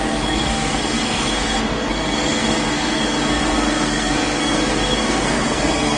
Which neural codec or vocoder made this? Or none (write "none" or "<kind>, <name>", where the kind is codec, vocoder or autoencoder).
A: codec, SNAC